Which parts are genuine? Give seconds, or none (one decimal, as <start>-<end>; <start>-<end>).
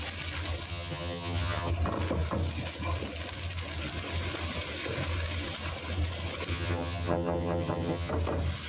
0.0-0.7; 1.7-6.5; 8.1-8.7